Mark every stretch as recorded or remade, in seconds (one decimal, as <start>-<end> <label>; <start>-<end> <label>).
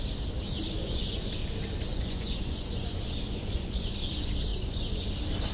0.0-0.8 recorded; 0.8-1.3 remade; 1.3-1.9 recorded; 1.9-3.9 remade; 3.9-4.5 recorded; 4.5-5.1 remade; 5.1-5.5 recorded